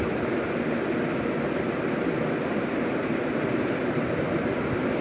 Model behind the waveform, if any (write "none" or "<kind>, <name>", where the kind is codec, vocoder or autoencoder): none